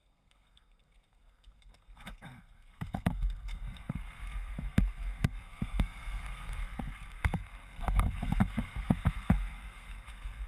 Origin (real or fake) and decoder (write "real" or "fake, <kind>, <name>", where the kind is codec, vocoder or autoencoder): fake, codec, SNAC